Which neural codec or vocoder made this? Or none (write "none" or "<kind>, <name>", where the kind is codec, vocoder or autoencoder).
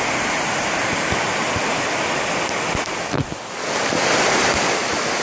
none